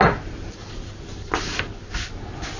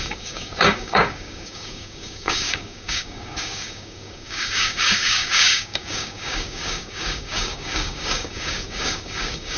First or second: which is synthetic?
second